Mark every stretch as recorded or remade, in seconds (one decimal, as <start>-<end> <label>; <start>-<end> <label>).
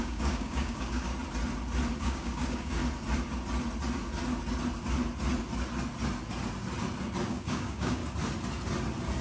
0.0-1.1 remade; 1.1-2.0 recorded; 2.0-2.8 remade; 2.8-7.3 recorded; 7.3-8.0 remade; 8.0-9.2 recorded